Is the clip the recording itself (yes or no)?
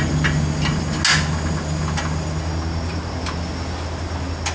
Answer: yes